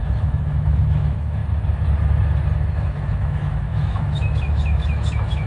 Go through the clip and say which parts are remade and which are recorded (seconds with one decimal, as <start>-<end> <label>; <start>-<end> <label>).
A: 0.0-1.4 remade; 1.4-2.7 recorded; 2.7-5.5 remade